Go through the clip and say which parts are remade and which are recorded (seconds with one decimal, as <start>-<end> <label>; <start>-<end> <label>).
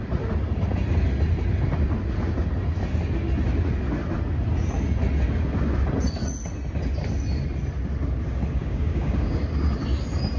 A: 0.0-8.6 recorded; 8.6-9.4 remade; 9.4-10.4 recorded